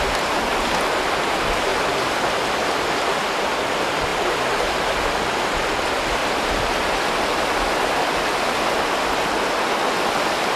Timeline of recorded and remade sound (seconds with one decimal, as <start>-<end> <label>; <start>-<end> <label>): 0.0-1.7 recorded; 1.7-2.7 remade; 2.7-6.2 recorded; 6.2-6.8 remade; 6.8-10.6 recorded